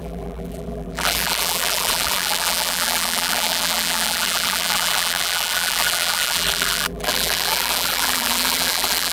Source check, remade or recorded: remade